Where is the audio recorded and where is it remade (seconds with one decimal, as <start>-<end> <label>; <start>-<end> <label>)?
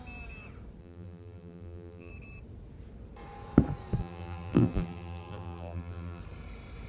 0.0-0.8 recorded; 0.8-2.1 remade; 2.1-4.0 recorded; 4.0-6.2 remade; 6.2-6.9 recorded